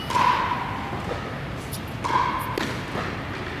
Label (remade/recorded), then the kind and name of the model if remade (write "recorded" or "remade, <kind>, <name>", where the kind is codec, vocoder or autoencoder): recorded